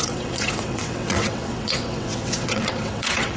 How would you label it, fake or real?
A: fake